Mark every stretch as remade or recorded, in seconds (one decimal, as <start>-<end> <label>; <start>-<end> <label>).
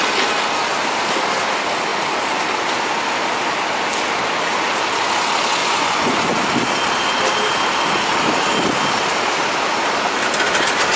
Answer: 0.0-5.6 recorded; 5.6-6.4 remade; 6.4-11.0 recorded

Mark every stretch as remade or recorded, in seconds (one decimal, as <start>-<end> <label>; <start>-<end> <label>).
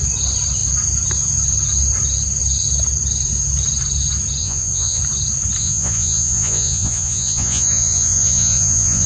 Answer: 0.0-4.4 recorded; 4.4-5.0 remade; 5.0-5.6 recorded; 5.6-9.1 remade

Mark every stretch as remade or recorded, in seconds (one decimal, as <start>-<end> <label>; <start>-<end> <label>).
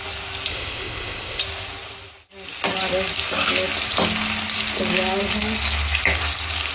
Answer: 0.0-0.5 recorded; 0.5-1.4 remade; 1.4-6.7 recorded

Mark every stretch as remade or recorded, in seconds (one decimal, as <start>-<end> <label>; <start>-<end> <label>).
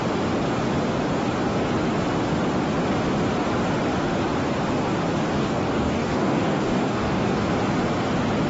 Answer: 0.0-5.4 recorded; 5.4-7.5 remade; 7.5-8.5 recorded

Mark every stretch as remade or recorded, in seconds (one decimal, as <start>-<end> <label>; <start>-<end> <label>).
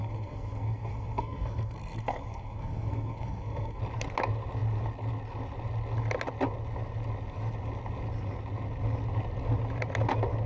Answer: 0.0-3.8 remade; 3.8-10.5 recorded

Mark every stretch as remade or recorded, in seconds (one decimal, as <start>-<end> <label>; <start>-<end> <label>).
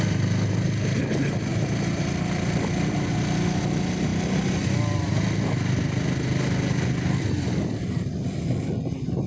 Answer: 0.0-9.3 recorded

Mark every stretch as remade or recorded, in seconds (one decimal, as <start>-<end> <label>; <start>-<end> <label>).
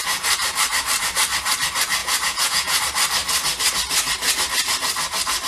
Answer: 0.0-2.0 recorded; 2.0-2.8 remade; 2.8-5.5 recorded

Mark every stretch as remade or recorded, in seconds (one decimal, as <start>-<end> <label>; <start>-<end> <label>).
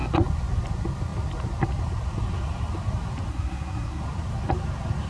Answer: 0.0-3.3 recorded; 3.3-4.0 remade; 4.0-5.1 recorded